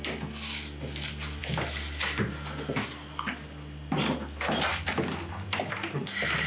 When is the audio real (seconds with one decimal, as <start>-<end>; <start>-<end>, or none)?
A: 0.0-6.5